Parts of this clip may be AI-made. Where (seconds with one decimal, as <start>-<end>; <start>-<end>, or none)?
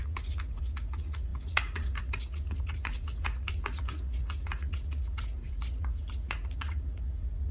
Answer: 0.0-7.5